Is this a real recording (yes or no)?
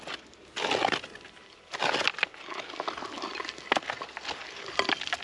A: yes